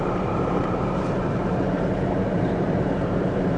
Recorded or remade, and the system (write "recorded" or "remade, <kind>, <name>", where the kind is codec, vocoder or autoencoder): remade, vocoder, BigVGAN v2